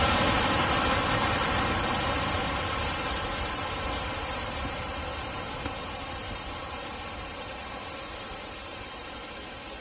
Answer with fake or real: fake